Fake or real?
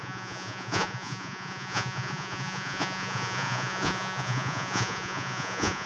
fake